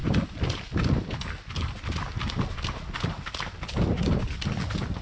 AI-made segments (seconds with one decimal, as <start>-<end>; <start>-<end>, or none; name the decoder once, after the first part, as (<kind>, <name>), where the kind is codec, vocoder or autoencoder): none